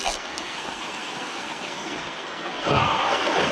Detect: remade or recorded remade